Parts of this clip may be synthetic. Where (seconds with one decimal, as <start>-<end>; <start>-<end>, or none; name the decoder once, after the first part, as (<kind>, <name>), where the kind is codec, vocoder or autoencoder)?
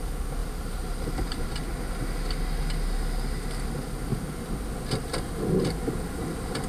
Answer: 0.4-1.5 (vocoder, BigVGAN v2)